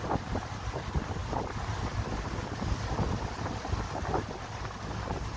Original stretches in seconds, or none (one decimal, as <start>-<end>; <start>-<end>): 0.0-5.4